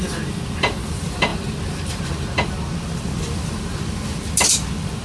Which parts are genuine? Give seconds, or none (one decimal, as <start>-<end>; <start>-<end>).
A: 0.0-5.0